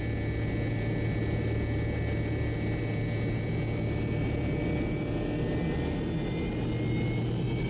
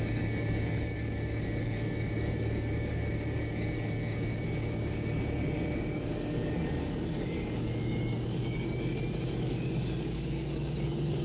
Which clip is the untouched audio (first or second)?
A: first